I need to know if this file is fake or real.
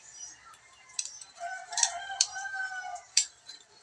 fake